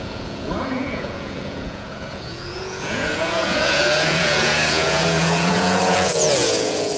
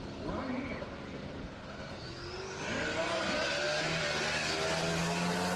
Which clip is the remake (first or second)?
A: first